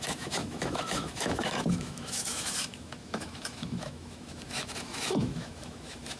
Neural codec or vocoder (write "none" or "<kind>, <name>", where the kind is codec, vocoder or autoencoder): autoencoder, DAC-VAE